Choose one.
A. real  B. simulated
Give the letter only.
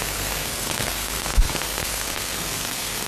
B